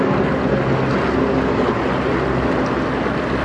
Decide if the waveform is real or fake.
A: real